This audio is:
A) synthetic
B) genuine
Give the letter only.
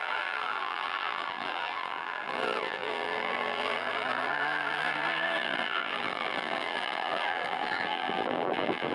A